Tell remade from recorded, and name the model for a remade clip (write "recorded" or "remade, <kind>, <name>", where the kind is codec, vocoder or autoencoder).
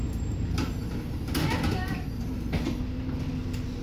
recorded